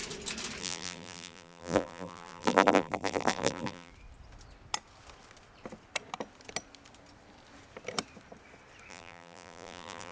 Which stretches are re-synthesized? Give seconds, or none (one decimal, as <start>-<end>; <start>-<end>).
0.6-3.9; 8.9-10.1